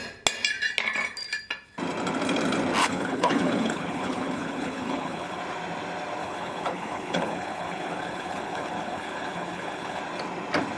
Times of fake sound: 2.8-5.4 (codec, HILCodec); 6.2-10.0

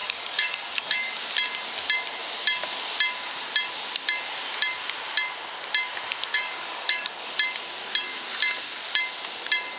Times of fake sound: 0.0-1.2 (codec, DAC); 6.3-7.3

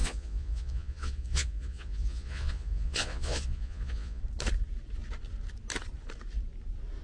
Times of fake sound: 0.0-4.2 (vocoder, Vocos)

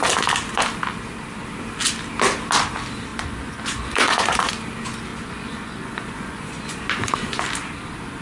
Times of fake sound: 3.1-4.5 (vocoder, Vocos); 5.1-7.4